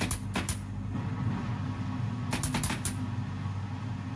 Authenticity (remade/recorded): recorded